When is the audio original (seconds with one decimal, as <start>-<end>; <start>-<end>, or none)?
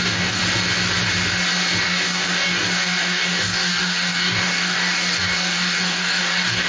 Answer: 0.4-1.8